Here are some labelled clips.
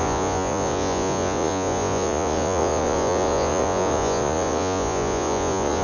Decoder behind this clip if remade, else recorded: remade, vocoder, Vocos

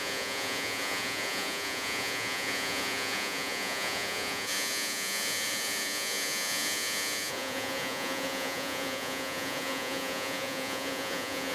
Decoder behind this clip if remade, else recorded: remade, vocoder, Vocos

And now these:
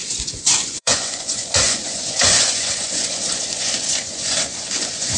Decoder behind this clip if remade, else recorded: remade, vocoder, Vocos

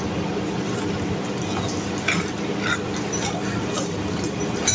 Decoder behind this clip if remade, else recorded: recorded